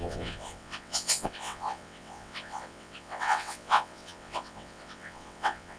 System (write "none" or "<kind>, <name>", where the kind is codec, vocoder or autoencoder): vocoder, WaveNeXt